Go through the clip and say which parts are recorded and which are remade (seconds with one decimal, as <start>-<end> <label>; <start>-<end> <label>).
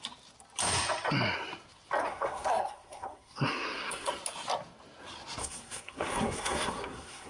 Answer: 0.0-2.0 recorded; 2.0-4.1 remade; 4.1-5.4 recorded; 5.4-7.3 remade